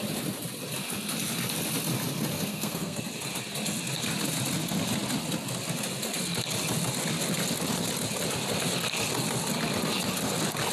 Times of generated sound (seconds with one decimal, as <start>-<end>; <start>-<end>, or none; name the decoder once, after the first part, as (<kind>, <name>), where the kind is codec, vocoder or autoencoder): 2.5-3.0 (codec, SNAC)